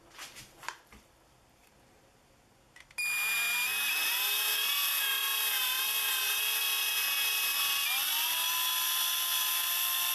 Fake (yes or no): no